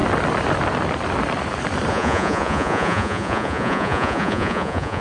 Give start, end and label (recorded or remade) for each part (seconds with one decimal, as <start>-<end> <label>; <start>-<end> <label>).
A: 0.0-1.9 recorded; 1.9-5.0 remade